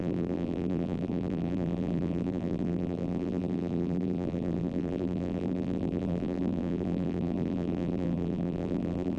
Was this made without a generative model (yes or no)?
no